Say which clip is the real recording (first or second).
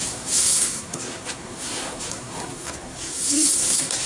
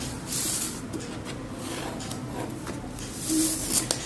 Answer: second